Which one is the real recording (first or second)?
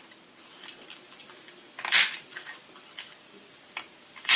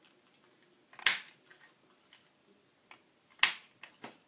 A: second